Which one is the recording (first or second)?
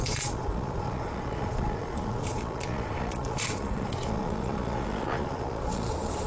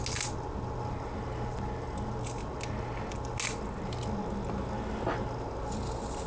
second